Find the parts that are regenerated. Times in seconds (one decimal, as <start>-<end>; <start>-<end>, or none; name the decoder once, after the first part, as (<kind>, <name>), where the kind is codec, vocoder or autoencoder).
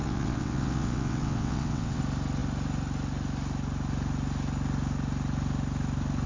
0.0-2.0 (vocoder, WaveNeXt)